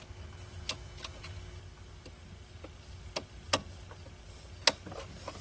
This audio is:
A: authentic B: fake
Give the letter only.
A